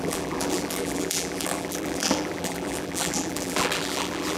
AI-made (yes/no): yes